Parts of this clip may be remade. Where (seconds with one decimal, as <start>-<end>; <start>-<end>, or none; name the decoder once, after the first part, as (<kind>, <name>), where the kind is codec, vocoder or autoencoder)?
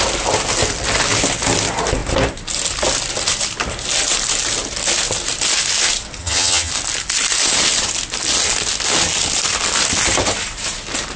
6.2-6.7 (vocoder, HiFi-GAN)